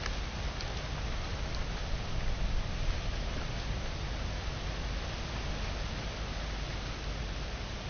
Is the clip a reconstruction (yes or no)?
no